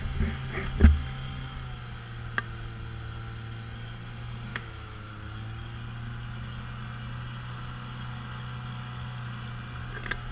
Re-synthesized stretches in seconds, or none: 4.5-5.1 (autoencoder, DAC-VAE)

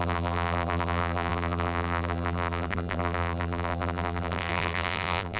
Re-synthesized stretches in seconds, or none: 0.0-5.4 (vocoder, BigVGAN v2)

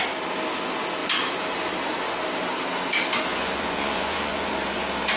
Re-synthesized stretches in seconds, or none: 3.3-4.5 (vocoder, Vocos)

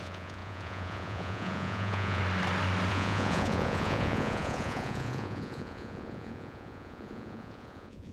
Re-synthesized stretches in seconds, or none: 0.0-2.2 (vocoder, Vocos); 2.9-8.1

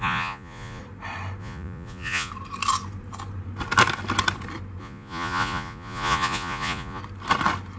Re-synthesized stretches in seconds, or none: 0.0-0.8 (vocoder, Vocos); 1.4-2.3; 4.8-7.0

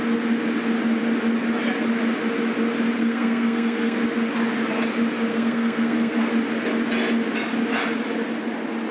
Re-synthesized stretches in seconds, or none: 3.0-4.0 (codec, SNAC); 5.3-6.3

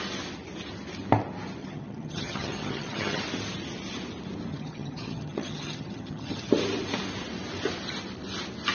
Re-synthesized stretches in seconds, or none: 1.6-3.2 (vocoder, HiFi-GAN); 4.5-6.5